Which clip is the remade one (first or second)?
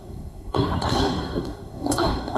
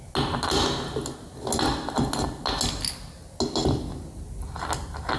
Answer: first